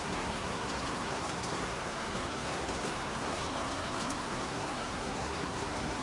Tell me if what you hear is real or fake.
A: fake